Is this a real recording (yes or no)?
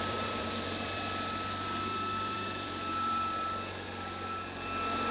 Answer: no